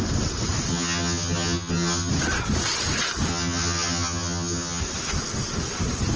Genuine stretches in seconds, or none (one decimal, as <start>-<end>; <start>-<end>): 0.0-0.7; 2.1-3.3; 4.8-6.2